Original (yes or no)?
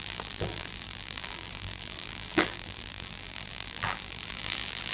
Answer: no